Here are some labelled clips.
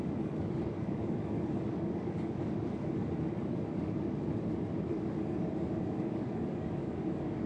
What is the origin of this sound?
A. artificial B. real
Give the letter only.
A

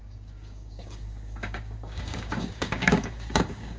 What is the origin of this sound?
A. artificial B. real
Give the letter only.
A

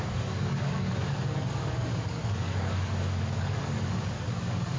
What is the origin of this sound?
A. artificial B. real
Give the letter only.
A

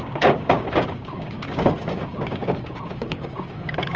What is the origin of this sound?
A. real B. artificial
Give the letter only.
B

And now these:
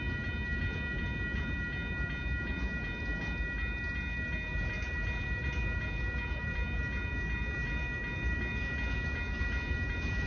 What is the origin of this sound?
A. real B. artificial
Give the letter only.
A